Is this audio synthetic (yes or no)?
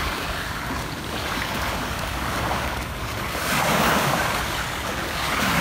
yes